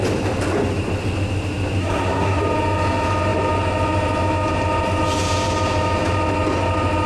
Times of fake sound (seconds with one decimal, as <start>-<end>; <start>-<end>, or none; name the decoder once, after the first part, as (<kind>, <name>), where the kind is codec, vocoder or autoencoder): 1.8-2.4 (codec, SNAC)